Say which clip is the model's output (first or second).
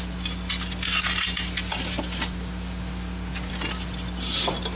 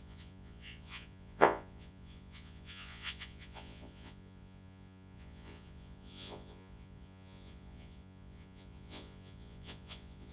second